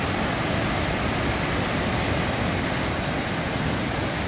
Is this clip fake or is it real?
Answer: real